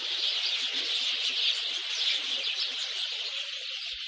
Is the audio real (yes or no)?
yes